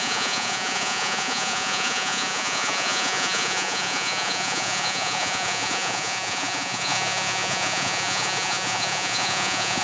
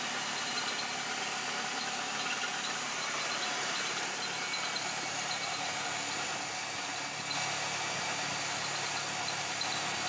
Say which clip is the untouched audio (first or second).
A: second